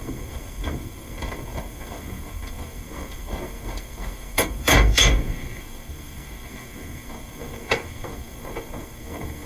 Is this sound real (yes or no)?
no